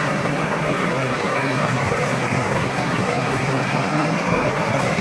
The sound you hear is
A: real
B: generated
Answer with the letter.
B